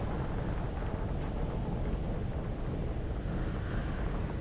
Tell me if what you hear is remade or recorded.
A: recorded